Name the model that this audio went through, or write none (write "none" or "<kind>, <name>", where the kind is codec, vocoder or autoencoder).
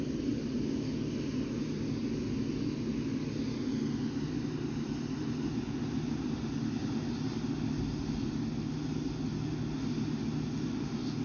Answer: none